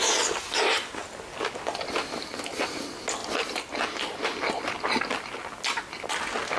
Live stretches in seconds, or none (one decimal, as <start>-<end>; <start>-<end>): 0.0-6.6

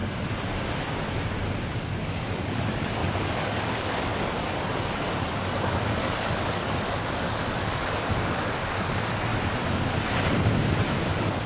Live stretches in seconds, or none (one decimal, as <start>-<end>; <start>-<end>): 0.0-1.7; 9.3-11.1

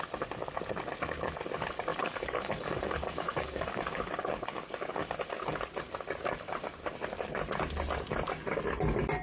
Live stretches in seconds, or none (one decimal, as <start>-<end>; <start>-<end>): 0.0-1.9; 4.1-9.2

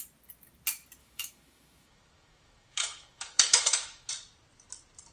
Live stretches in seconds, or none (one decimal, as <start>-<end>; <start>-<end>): 0.0-1.0; 4.1-5.1

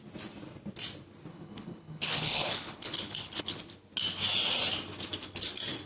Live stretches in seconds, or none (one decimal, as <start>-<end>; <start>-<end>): 0.0-1.3; 3.6-5.9